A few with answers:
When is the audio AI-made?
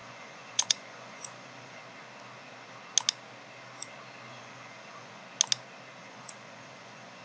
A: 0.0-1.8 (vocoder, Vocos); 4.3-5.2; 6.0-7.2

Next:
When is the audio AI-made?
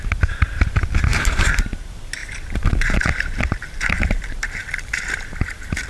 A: 1.1-1.6 (vocoder, BigVGAN v2); 2.2-5.0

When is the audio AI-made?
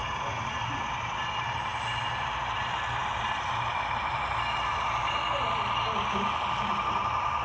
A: 0.0-0.7 (vocoder, Vocos)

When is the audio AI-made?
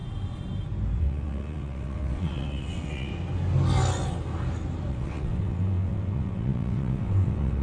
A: 1.0-3.1 (vocoder, WaveNeXt); 4.9-7.6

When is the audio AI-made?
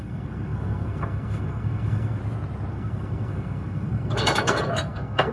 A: 0.0-2.2 (codec, SNAC); 2.7-5.3